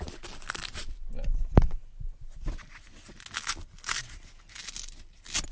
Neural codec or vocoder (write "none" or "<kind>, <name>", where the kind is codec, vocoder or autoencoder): none